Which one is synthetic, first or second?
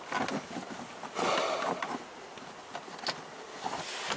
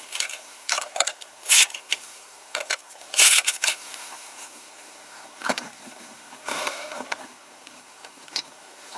second